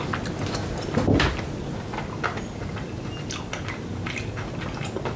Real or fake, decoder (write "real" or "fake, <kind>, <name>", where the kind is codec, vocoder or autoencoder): real